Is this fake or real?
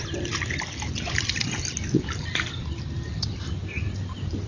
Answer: real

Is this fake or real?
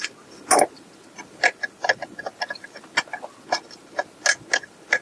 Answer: real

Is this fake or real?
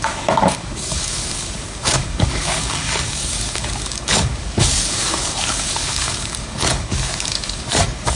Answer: fake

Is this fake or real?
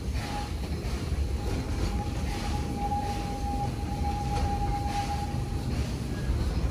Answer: real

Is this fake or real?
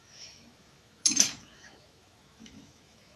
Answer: fake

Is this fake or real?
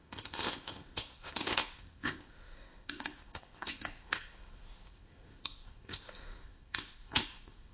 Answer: fake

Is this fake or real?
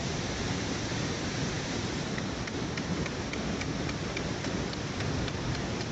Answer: real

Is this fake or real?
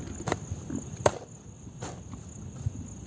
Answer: real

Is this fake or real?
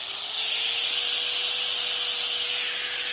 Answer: real